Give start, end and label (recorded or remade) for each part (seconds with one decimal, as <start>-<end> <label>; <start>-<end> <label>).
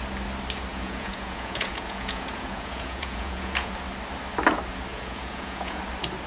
0.0-0.7 recorded; 0.7-3.7 remade; 3.7-4.9 recorded; 4.9-5.8 remade; 5.8-6.3 recorded